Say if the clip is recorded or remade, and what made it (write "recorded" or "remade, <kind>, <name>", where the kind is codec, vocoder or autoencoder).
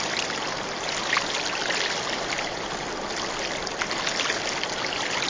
recorded